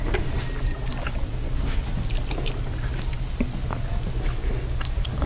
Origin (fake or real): real